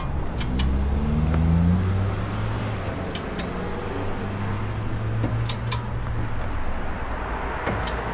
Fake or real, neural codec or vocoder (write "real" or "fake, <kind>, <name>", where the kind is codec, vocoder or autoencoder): real